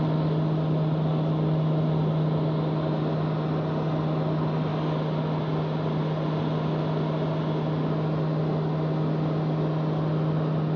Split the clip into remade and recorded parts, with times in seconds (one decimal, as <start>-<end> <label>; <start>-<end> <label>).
0.0-10.8 recorded

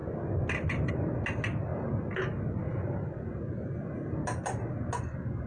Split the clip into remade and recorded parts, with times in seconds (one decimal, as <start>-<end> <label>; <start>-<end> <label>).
0.0-5.5 recorded

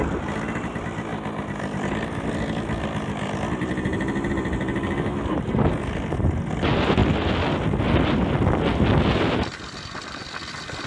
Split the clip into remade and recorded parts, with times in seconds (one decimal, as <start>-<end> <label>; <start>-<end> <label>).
0.0-10.9 recorded

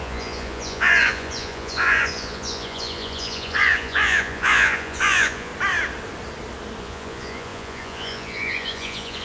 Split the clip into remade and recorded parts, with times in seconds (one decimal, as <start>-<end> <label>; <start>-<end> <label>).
0.0-5.5 remade; 5.5-6.8 recorded; 6.8-9.2 remade

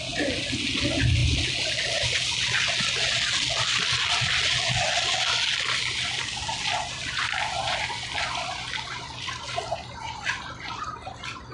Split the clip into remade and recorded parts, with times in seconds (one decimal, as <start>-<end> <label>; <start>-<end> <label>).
0.0-11.5 recorded

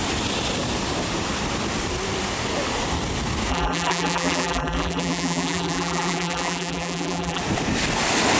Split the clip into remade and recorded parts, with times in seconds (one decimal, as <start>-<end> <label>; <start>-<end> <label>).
0.0-3.5 recorded; 3.5-7.4 remade; 7.4-8.4 recorded

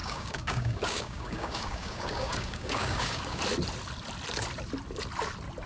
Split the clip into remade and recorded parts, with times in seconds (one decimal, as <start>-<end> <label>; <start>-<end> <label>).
0.0-3.4 remade; 3.4-5.7 recorded